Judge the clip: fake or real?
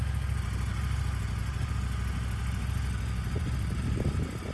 real